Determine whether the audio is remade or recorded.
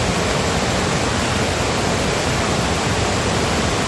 recorded